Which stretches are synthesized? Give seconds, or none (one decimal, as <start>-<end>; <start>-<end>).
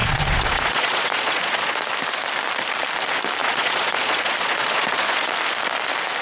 0.0-1.8; 3.4-5.3